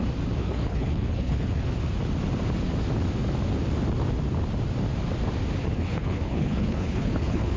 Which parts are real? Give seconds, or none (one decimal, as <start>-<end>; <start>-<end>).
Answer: 0.0-0.4; 1.7-5.6